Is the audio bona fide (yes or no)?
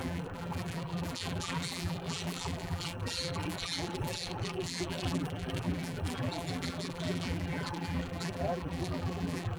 no